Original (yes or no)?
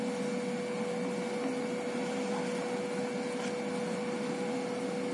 yes